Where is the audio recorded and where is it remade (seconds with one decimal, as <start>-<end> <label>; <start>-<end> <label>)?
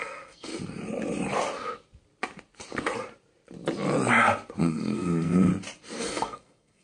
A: 0.0-0.5 remade; 0.5-4.6 recorded; 4.6-5.5 remade; 5.5-6.0 recorded; 6.0-6.8 remade